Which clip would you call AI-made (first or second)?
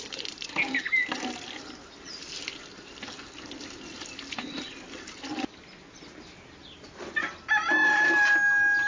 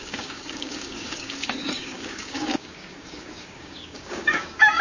second